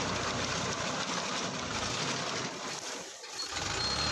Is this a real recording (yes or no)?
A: yes